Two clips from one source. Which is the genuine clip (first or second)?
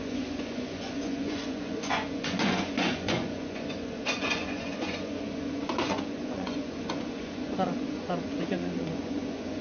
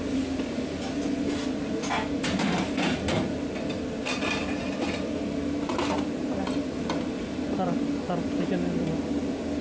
second